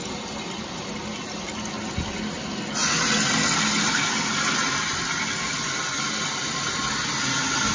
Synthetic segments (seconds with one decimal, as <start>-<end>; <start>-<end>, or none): none